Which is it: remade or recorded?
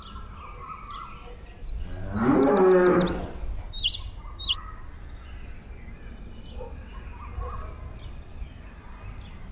recorded